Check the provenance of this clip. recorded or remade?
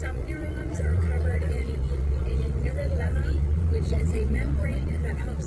remade